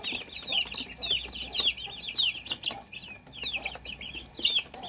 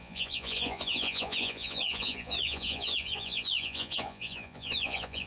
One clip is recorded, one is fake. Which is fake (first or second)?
second